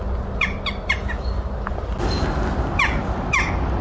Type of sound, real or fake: real